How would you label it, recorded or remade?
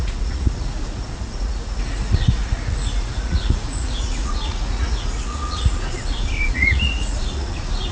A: remade